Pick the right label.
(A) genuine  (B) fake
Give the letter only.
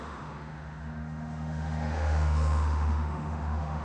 B